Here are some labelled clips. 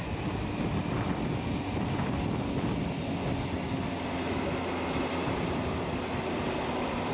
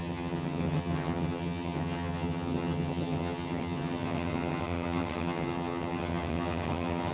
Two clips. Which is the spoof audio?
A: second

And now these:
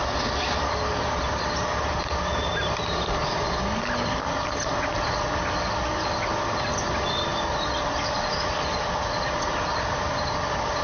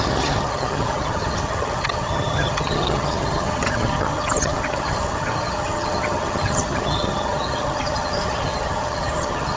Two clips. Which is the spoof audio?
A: second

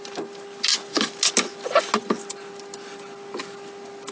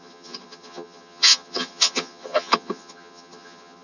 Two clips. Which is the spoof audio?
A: second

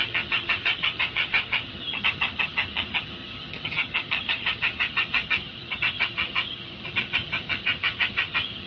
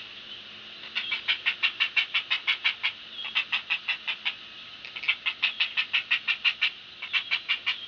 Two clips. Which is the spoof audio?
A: first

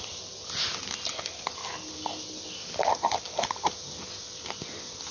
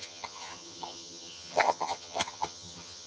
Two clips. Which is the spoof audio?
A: second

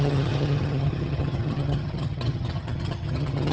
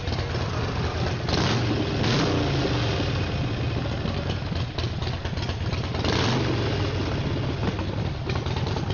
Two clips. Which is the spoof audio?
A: first